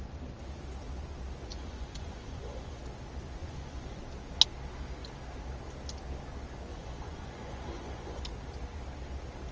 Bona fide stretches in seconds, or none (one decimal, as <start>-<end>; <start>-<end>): 0.0-1.5; 2.8-3.4; 4.0-6.7; 8.2-9.5